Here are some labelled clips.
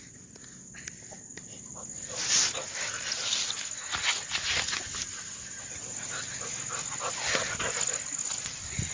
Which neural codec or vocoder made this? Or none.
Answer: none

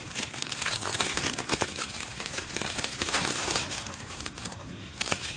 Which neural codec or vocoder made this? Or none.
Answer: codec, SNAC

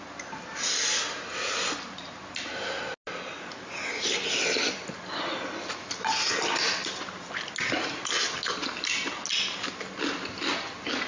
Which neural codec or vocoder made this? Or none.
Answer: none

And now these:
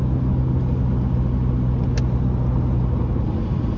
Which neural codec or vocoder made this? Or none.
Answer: none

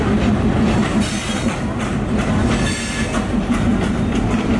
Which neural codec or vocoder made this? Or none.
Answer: none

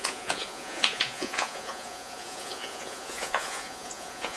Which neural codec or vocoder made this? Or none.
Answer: vocoder, Vocos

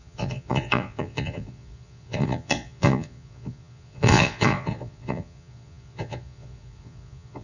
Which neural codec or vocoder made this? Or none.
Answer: vocoder, Vocos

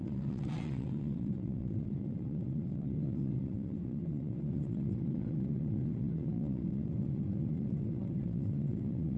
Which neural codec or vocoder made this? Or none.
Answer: vocoder, WaveNeXt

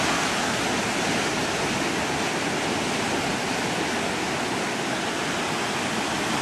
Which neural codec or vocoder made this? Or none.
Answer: none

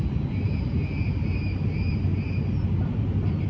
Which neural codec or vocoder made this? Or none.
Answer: none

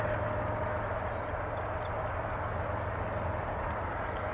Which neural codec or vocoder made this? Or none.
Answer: none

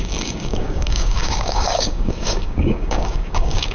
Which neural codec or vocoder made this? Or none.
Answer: codec, DAC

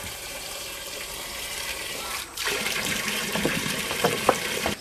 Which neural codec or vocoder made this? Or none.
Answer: vocoder, BigVGAN v2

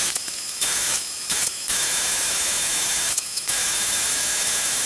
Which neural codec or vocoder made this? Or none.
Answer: autoencoder, DAC-VAE